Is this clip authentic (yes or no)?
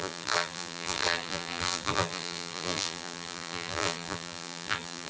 no